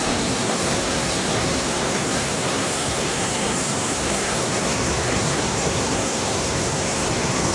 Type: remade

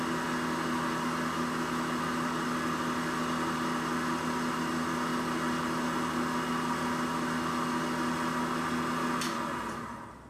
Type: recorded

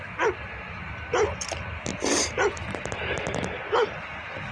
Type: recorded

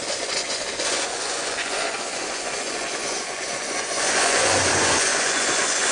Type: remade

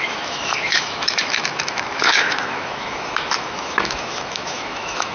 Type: remade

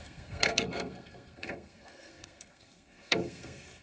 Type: remade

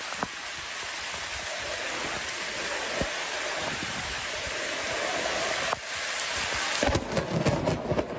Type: recorded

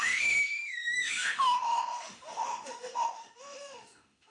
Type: remade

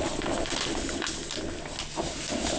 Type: recorded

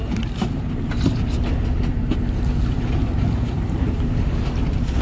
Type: recorded